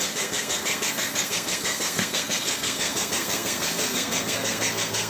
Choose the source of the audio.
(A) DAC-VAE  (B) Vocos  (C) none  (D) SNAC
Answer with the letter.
D